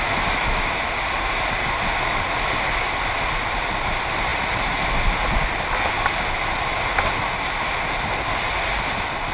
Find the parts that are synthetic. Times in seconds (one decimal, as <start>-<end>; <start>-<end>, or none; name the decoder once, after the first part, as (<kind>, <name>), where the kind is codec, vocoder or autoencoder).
none